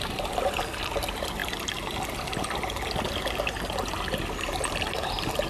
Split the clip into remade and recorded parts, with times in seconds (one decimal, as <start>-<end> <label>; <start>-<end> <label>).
0.0-5.5 recorded